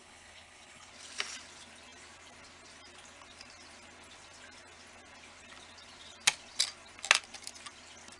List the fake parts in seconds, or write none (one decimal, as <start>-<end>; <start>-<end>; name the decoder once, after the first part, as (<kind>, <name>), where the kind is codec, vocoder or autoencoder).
0.0-0.9 (codec, HILCodec)